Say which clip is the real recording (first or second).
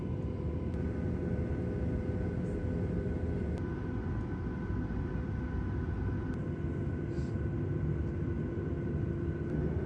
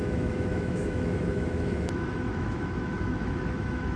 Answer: first